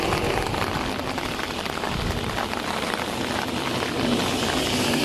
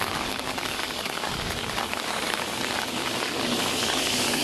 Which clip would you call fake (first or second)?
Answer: second